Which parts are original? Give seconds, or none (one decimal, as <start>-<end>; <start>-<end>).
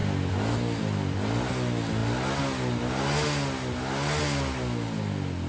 0.0-5.5